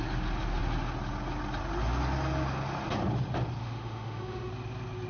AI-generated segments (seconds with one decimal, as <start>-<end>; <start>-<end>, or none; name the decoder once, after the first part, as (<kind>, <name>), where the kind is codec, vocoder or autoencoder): 3.6-4.5 (autoencoder, DAC-VAE)